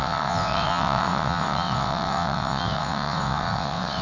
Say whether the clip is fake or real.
fake